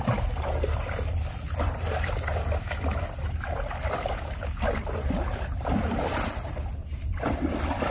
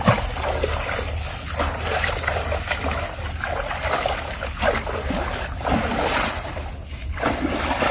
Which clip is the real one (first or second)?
second